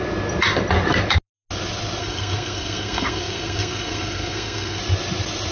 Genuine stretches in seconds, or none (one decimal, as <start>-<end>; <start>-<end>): 0.0-2.0; 4.8-5.5